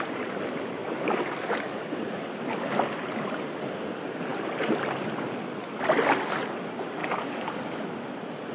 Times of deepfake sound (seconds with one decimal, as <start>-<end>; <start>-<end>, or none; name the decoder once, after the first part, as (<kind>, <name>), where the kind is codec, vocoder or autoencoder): 0.8-1.8 (codec, DAC); 7.0-7.8